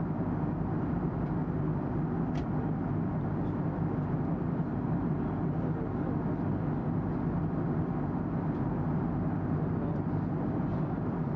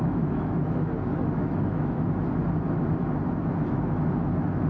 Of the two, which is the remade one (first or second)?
second